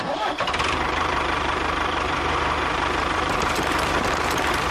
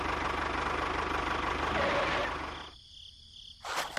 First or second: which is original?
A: second